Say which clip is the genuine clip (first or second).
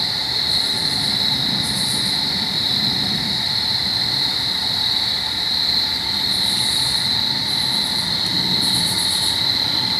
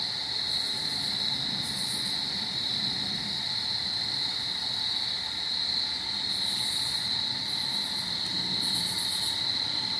second